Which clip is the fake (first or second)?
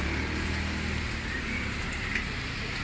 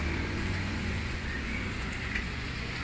second